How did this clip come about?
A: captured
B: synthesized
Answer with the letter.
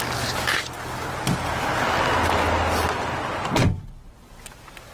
A